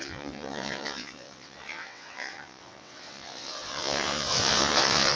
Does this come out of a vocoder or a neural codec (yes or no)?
yes